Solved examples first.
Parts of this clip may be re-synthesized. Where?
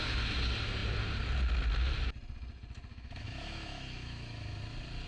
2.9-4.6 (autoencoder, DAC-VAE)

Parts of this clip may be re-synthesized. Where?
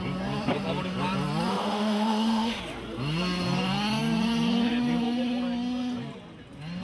1.5-2.6 (autoencoder, DAC-VAE)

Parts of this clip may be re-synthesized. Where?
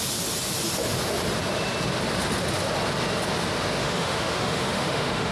3.8-5.3 (autoencoder, DAC-VAE)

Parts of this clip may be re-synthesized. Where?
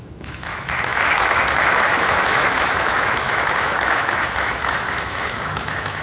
0.0-6.0 (autoencoder, DAC-VAE)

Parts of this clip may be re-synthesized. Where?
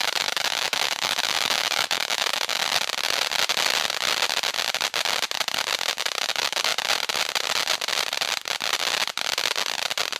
0.0-2.6 (autoencoder, DAC-VAE); 6.0-6.7